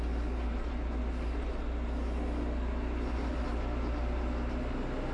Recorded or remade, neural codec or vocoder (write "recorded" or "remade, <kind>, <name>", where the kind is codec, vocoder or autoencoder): recorded